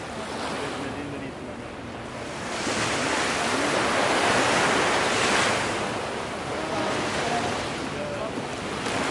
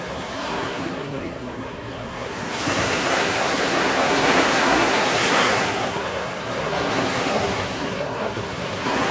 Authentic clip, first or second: first